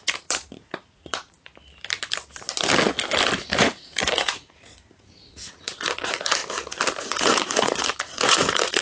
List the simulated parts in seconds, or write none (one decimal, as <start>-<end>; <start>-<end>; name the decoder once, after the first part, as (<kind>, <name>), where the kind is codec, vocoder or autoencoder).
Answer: 0.0-1.5 (vocoder, Vocos); 3.6-6.4; 7.0-8.8